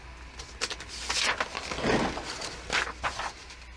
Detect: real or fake real